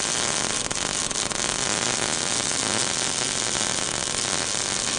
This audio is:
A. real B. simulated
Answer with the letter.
A